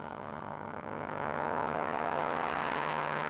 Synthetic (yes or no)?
yes